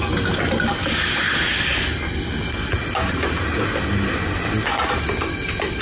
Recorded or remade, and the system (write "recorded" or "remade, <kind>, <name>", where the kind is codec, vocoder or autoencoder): recorded